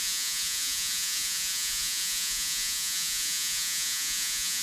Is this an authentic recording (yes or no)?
no